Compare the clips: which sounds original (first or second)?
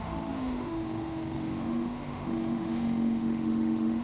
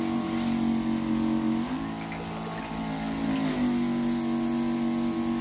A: second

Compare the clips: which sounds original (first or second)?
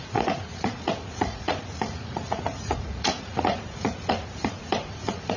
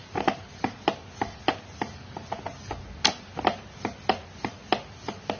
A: second